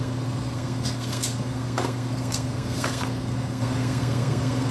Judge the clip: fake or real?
fake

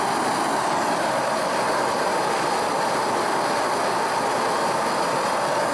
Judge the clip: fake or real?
real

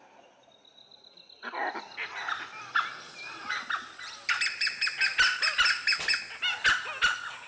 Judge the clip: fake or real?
real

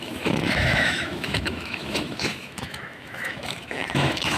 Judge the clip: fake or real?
fake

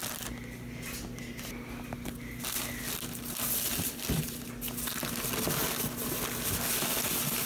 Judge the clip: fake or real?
real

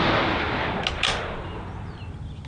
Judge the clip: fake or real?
real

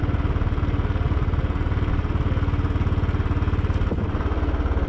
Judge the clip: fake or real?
real